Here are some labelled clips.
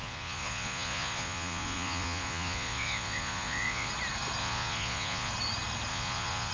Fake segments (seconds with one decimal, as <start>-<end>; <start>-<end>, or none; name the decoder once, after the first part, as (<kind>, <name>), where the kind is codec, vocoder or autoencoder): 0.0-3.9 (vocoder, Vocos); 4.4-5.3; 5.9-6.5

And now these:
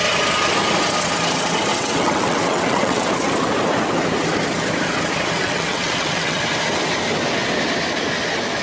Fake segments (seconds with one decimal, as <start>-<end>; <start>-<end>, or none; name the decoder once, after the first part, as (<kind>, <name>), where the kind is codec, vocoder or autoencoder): 1.7-3.1 (vocoder, WaveNeXt); 5.4-6.4

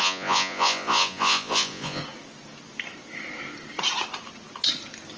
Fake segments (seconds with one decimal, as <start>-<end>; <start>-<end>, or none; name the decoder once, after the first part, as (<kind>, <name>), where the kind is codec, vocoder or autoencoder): 0.0-2.0 (vocoder, Vocos)